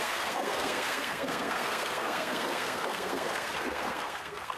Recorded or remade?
remade